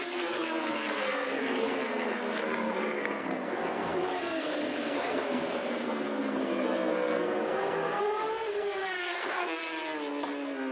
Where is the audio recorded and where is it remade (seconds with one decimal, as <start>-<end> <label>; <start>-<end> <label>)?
0.0-9.6 remade; 9.6-10.7 recorded